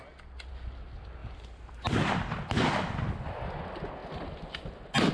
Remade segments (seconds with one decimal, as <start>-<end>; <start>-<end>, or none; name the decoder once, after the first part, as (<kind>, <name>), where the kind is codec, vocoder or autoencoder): 1.2-2.0 (vocoder, BigVGAN v2)